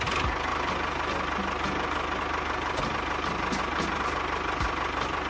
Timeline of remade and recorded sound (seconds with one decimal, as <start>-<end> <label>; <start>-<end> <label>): 0.0-5.3 recorded